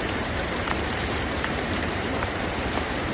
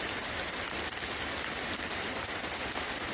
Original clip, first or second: second